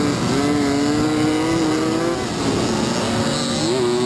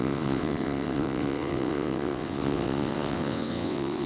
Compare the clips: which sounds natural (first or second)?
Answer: first